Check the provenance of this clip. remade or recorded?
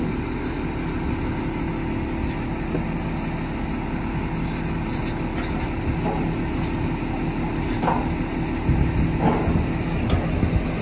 recorded